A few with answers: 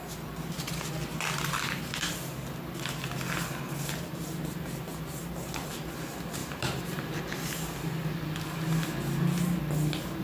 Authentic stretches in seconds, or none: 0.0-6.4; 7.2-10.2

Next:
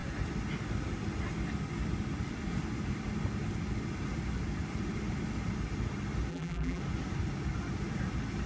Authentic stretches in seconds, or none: 0.0-6.3; 6.8-8.5